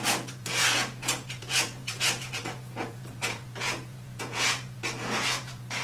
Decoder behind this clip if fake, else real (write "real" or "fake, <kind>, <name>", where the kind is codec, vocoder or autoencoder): fake, vocoder, Vocos